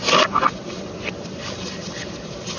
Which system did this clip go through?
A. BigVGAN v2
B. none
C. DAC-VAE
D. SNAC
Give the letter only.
B